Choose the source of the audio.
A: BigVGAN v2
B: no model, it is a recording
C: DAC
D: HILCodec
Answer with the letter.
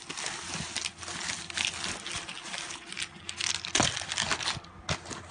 B